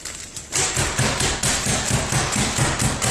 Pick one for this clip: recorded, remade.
recorded